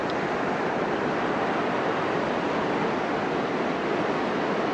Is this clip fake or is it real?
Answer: real